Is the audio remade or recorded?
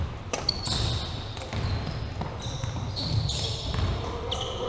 recorded